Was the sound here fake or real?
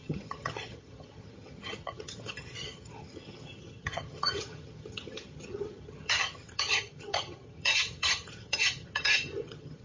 fake